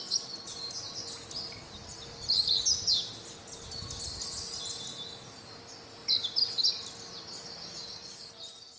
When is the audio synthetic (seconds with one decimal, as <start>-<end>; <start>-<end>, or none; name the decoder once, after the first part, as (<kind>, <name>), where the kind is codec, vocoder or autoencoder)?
7.6-8.3 (codec, DAC)